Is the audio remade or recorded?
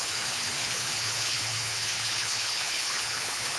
remade